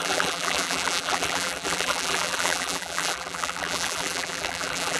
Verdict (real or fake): fake